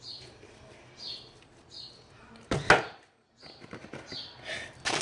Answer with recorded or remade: recorded